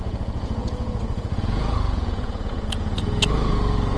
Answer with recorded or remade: remade